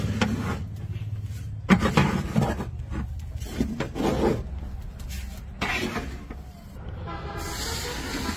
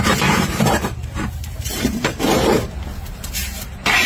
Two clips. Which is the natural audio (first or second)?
first